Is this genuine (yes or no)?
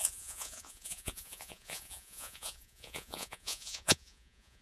no